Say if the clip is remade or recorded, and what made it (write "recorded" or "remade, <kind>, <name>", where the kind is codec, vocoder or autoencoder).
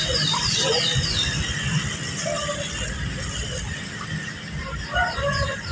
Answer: remade, vocoder, BigVGAN v2